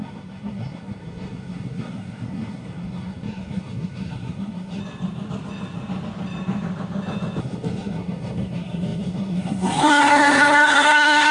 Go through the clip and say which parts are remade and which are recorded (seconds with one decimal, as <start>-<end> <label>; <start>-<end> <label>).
0.0-4.8 remade; 4.8-7.4 recorded; 7.4-11.3 remade